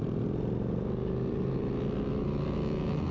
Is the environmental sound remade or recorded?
recorded